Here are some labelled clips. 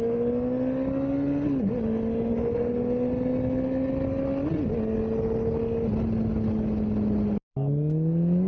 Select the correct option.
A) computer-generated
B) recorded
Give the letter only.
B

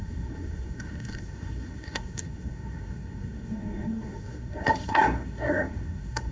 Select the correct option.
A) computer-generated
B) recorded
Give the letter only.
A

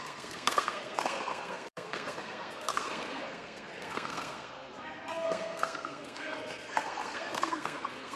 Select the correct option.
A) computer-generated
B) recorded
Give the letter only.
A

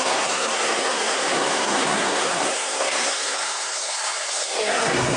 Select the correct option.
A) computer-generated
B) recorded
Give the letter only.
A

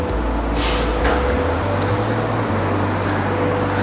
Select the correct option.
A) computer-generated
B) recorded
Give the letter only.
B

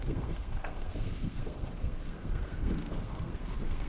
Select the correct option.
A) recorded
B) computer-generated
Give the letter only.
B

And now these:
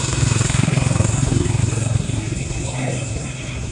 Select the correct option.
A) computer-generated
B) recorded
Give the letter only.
A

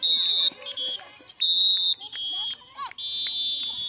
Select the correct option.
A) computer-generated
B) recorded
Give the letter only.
B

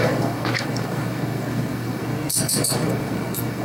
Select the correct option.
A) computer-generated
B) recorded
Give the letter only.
A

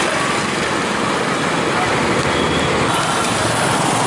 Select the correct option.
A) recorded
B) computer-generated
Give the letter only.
A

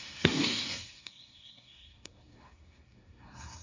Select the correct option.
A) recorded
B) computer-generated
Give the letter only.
B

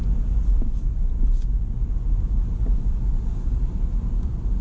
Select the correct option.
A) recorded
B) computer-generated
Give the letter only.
A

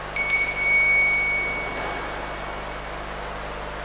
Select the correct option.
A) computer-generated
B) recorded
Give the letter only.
B